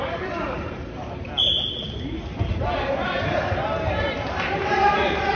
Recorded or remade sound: remade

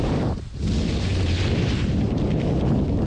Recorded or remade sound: recorded